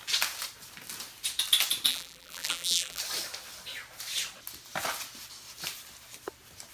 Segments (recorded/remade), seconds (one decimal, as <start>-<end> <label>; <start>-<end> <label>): 0.0-1.9 recorded; 1.9-3.0 remade; 3.0-6.7 recorded